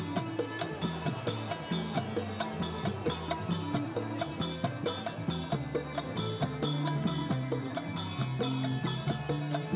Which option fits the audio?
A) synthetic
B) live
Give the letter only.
B